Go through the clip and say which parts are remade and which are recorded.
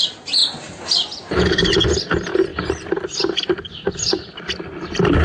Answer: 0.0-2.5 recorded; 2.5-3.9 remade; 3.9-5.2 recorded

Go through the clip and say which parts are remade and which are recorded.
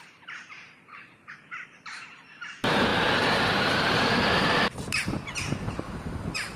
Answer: 0.0-6.6 remade